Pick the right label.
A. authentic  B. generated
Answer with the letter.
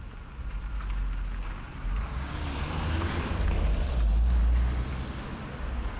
A